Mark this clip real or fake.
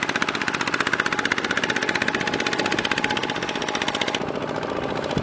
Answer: real